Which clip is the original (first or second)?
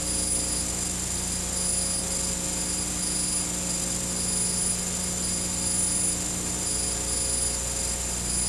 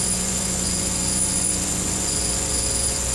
first